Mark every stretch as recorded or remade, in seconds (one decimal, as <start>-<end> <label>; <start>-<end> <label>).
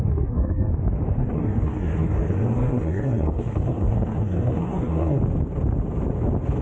0.0-0.7 remade; 0.7-1.2 recorded; 1.2-5.2 remade; 5.2-6.6 recorded